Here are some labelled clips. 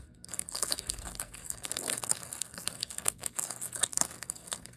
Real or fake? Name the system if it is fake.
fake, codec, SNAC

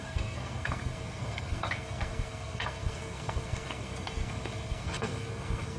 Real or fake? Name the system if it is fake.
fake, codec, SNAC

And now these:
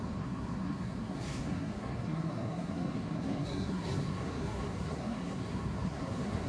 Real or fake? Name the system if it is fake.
fake, codec, SNAC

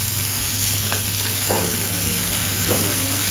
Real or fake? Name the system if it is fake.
fake, codec, SNAC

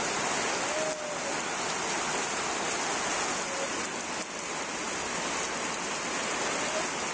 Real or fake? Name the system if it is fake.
real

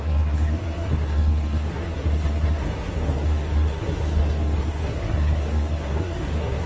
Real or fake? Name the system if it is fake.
fake, codec, SNAC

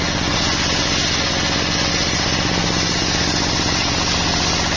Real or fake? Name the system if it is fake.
real